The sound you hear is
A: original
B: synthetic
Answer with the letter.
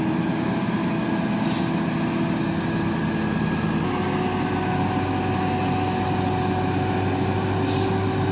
A